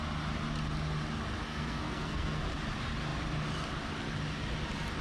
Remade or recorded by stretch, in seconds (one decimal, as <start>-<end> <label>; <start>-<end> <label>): 0.0-1.5 recorded; 1.5-2.4 remade; 2.4-5.0 recorded